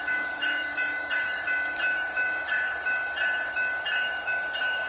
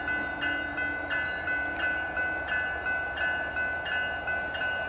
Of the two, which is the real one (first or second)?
second